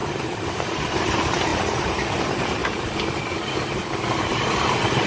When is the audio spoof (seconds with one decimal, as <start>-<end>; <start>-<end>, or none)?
0.0-5.1